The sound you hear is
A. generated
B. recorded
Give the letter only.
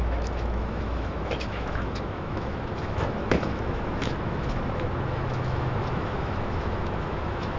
A